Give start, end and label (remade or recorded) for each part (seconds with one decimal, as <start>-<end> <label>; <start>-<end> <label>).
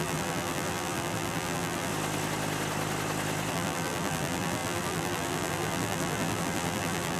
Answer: 0.0-1.9 remade; 1.9-3.5 recorded; 3.5-7.2 remade